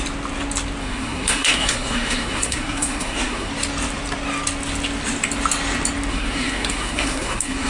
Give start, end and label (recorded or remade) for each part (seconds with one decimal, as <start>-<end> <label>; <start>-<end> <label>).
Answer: 0.0-0.8 recorded; 0.8-3.5 remade; 3.5-6.1 recorded; 6.1-7.7 remade